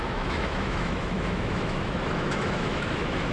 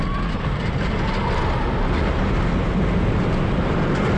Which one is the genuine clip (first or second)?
second